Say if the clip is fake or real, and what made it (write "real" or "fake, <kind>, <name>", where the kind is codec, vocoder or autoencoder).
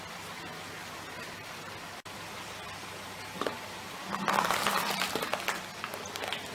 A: real